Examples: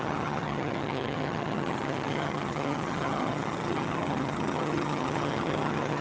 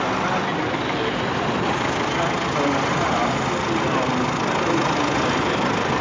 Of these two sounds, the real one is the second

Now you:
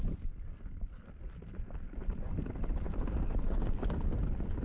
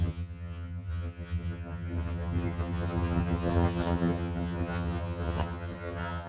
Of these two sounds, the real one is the first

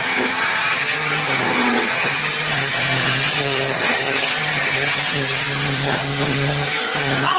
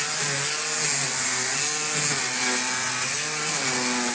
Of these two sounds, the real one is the second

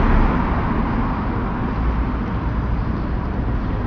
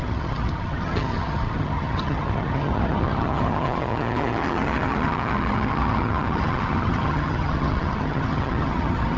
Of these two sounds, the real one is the first